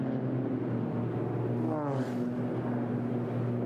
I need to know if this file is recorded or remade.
recorded